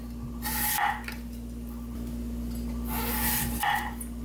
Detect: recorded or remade recorded